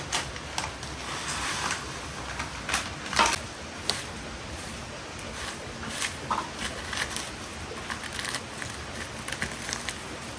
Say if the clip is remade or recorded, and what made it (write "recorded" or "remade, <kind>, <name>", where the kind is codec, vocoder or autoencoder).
recorded